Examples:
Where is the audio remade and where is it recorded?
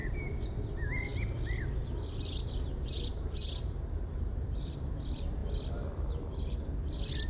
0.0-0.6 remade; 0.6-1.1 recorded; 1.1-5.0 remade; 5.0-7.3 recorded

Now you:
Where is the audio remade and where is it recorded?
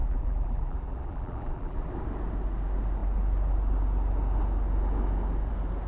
0.0-1.9 remade; 1.9-5.9 recorded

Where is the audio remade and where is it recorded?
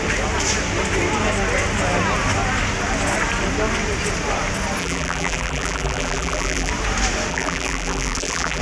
0.0-4.8 recorded; 4.8-6.7 remade; 6.7-7.3 recorded; 7.3-8.6 remade